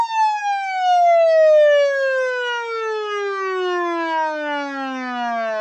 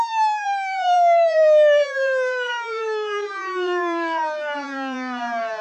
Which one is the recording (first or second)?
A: first